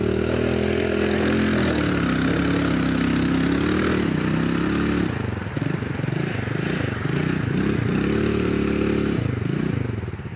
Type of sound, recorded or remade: recorded